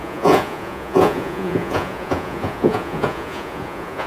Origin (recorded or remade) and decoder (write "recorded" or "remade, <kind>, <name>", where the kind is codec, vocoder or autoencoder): remade, vocoder, Vocos